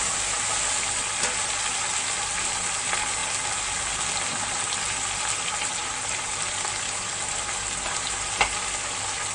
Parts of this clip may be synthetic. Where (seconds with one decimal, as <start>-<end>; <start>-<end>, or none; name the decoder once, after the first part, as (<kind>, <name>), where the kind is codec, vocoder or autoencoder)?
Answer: none